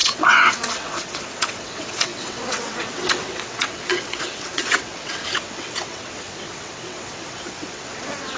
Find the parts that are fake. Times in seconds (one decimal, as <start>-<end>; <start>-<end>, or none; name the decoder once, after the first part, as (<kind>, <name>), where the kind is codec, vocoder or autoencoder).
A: 0.0-8.4 (vocoder, WaveNeXt)